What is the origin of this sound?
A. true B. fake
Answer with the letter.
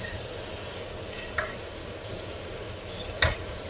A